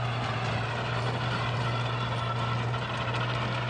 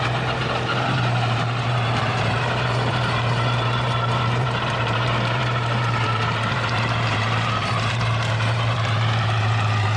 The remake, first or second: second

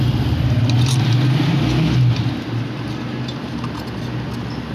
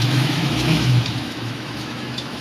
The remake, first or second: second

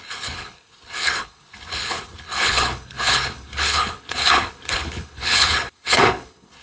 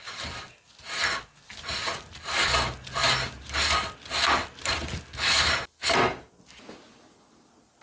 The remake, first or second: first